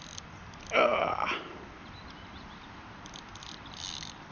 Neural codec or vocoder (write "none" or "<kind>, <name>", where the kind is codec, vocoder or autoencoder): none